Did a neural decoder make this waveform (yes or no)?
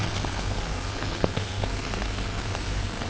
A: yes